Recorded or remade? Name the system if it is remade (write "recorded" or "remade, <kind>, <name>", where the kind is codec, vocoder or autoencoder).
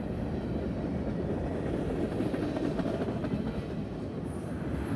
remade, vocoder, BigVGAN v2